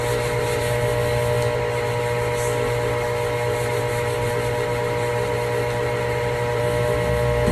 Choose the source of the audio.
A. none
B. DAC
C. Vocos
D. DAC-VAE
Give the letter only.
A